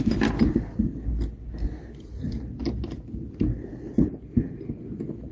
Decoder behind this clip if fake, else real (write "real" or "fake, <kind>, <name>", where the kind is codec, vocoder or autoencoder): real